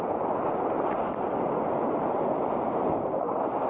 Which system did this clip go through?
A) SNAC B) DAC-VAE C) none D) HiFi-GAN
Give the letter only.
C